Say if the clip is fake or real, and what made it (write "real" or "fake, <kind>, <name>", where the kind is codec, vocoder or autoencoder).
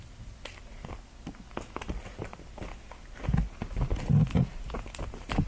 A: real